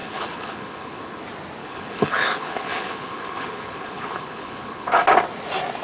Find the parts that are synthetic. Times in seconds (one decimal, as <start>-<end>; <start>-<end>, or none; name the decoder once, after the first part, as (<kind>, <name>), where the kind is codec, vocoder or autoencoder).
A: 0.0-1.2 (codec, HILCodec); 1.6-5.0